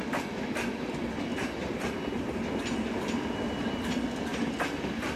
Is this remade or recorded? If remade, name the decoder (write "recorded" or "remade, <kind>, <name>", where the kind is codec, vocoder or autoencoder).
recorded